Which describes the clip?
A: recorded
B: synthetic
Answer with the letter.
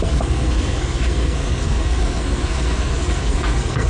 B